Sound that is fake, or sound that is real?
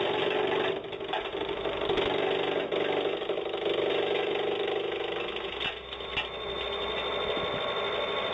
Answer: real